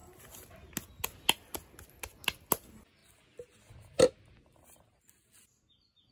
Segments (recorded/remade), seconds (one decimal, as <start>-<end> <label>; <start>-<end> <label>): 0.0-6.1 recorded